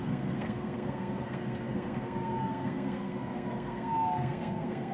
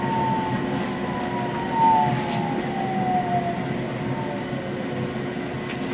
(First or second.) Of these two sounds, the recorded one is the second